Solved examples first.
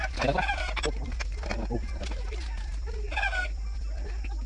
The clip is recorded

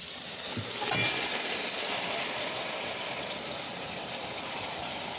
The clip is recorded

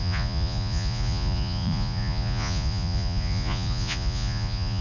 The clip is remade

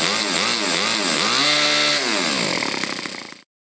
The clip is recorded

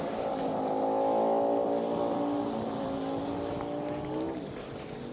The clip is recorded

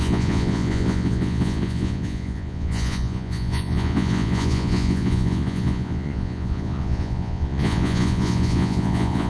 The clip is remade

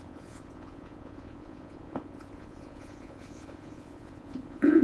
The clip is remade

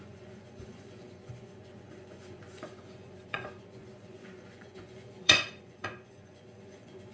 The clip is remade